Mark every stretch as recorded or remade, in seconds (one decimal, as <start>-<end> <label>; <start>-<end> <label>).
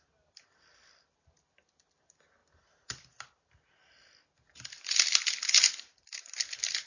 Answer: 0.0-6.9 recorded